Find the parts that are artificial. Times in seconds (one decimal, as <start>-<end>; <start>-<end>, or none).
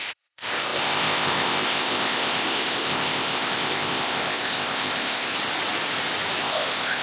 0.0-5.3; 6.4-7.0